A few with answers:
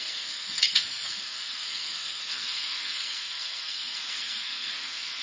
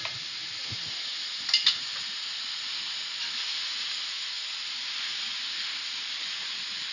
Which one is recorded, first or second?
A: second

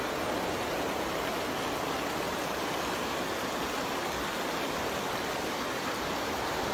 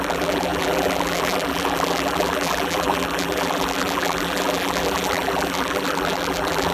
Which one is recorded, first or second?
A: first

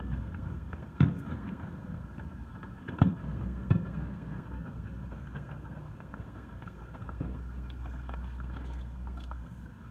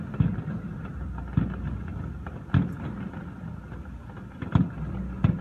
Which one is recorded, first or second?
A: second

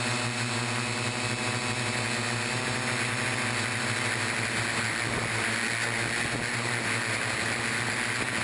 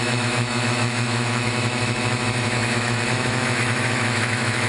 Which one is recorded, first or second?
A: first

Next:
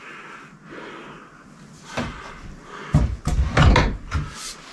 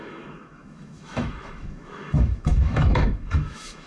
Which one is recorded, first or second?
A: first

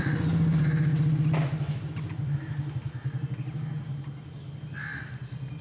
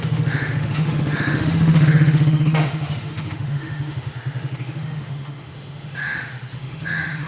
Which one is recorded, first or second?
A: first